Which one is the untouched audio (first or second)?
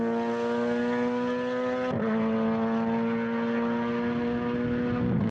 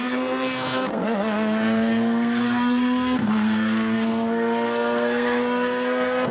first